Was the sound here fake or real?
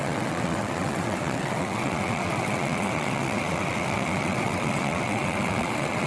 fake